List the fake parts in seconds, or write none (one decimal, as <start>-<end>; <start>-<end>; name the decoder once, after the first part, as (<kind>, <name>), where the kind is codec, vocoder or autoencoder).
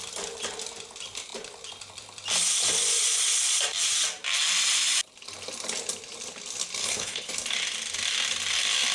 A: 6.8-7.3 (codec, HILCodec)